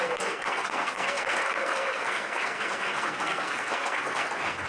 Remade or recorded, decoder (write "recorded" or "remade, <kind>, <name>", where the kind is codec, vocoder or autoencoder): remade, codec, SNAC